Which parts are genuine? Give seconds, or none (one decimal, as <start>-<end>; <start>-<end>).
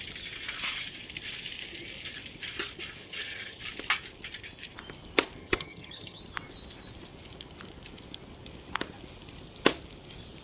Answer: 0.0-3.0; 3.6-5.4; 6.2-10.4